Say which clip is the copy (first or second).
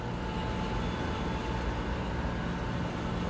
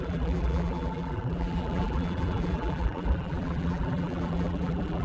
second